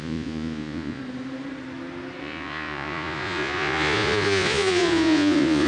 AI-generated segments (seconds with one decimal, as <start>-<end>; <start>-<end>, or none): 0.0-1.0; 2.2-5.7